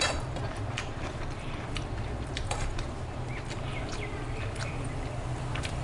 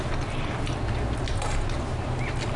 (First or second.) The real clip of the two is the second